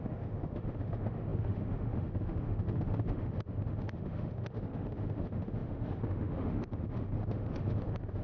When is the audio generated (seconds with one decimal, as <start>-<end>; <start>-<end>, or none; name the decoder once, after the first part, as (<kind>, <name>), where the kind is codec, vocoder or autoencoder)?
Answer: 0.0-8.2 (autoencoder, DAC-VAE)